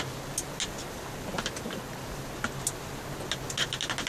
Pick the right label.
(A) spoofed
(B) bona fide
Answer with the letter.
B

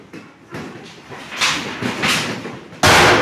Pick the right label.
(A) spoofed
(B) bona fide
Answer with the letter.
B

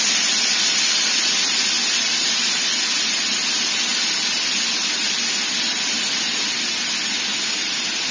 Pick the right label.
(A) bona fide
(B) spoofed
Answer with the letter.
A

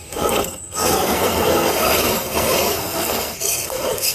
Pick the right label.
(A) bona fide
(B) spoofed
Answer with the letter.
B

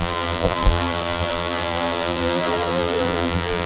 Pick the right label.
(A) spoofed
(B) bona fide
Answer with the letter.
A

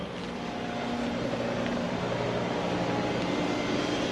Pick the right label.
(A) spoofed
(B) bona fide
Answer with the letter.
B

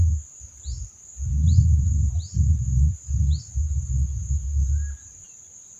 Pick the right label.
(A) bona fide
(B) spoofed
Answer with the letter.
A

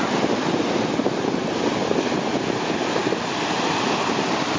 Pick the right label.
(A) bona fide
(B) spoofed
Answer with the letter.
A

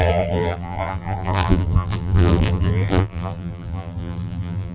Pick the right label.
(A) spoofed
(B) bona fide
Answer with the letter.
A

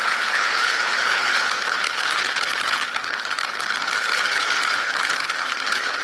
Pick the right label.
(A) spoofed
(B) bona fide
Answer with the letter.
A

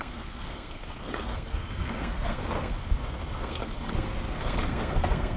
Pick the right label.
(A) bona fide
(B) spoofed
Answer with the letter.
B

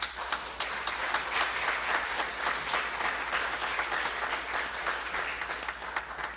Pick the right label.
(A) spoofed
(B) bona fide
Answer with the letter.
B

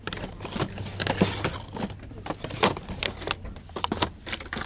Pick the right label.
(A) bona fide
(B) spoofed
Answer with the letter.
A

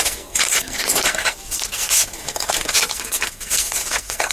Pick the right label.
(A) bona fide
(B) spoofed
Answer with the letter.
B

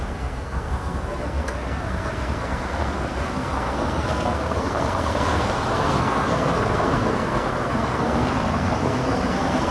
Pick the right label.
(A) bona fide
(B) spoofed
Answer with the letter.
B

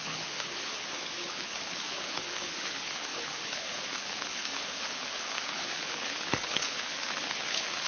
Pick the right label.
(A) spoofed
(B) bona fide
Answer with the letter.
A